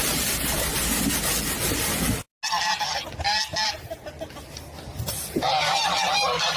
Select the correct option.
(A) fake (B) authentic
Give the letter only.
B